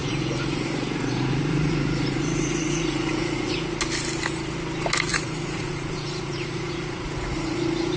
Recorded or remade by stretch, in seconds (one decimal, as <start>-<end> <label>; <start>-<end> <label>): 0.0-3.8 remade; 3.8-5.1 recorded; 5.1-8.0 remade